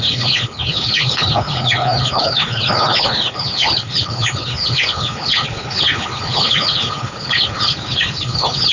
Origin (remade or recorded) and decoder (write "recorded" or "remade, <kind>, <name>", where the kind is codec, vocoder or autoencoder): remade, codec, HILCodec